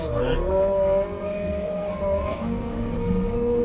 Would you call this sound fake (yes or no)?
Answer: yes